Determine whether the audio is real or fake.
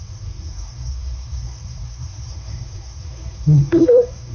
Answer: fake